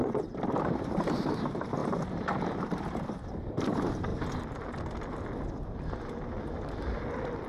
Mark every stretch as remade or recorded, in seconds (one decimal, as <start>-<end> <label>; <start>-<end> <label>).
0.0-4.1 remade; 4.1-7.5 recorded